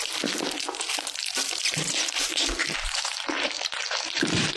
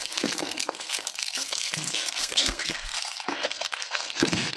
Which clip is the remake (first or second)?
second